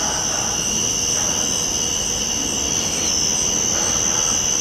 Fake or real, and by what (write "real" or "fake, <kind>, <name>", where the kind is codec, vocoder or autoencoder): real